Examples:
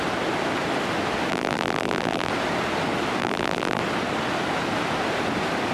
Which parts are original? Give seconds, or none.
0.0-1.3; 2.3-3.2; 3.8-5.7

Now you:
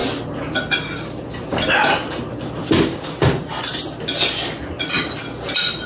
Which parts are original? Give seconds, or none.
0.0-5.9

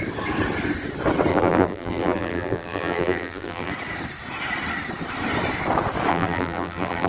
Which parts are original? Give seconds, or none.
0.0-1.3; 3.7-6.1

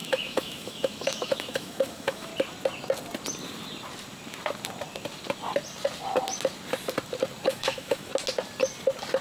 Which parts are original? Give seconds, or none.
2.3-7.5; 8.1-9.2

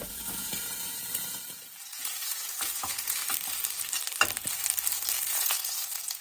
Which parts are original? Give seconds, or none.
3.2-5.3

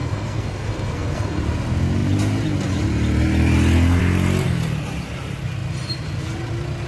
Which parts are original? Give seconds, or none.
1.4-6.9